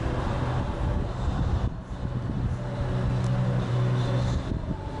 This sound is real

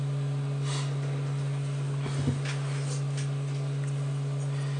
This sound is real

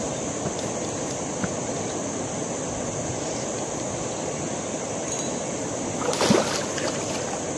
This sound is real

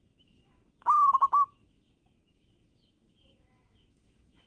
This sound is fake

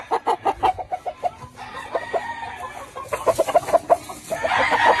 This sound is real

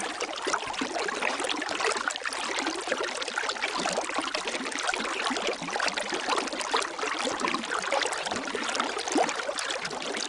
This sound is real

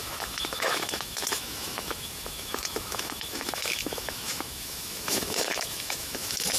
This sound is fake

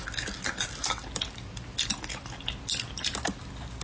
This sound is real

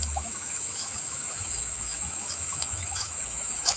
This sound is fake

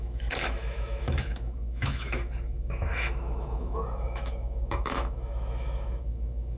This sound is fake